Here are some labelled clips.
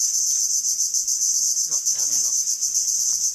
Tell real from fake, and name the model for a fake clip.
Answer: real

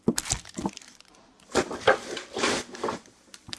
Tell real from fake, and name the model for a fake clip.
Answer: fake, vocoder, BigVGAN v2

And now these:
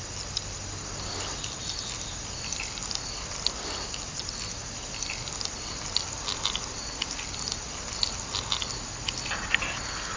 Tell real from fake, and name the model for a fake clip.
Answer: real